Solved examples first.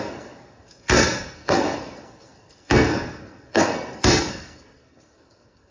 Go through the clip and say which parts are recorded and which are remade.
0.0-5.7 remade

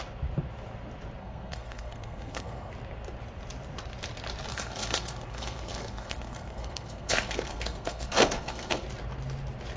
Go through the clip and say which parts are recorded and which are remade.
0.0-1.2 recorded; 1.2-2.7 remade; 2.7-4.5 recorded; 4.5-8.8 remade; 8.8-9.8 recorded